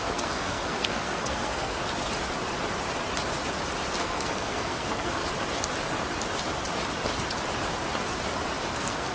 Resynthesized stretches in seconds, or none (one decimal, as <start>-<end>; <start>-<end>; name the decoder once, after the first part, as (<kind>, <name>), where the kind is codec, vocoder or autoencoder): 0.0-1.8 (codec, SNAC); 4.0-5.2; 8.7-9.1